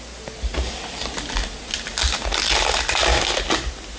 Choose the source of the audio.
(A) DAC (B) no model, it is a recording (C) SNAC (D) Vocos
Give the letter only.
B